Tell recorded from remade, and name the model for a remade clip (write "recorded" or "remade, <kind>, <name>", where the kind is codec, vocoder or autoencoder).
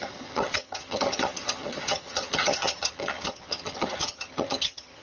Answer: remade, vocoder, HiFi-GAN